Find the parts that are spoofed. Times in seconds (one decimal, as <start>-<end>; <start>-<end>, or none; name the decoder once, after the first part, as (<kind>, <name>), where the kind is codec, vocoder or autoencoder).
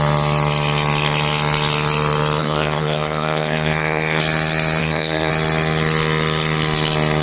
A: 2.4-4.2 (codec, SNAC); 4.8-5.3